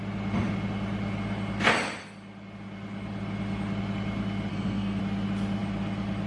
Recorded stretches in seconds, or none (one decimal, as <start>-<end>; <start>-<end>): 0.0-4.5; 5.0-6.3